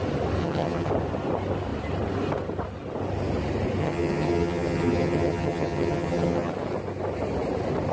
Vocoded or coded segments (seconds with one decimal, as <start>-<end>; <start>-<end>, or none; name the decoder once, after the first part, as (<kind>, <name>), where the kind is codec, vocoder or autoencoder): 0.4-0.9 (vocoder, HiFi-GAN); 3.8-6.5